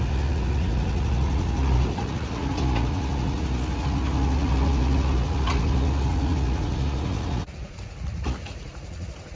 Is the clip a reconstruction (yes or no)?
yes